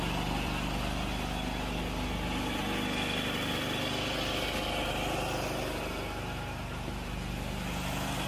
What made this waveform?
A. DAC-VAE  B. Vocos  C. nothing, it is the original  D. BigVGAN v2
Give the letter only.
C